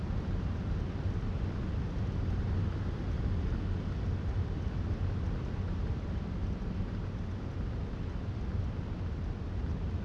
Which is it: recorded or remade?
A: recorded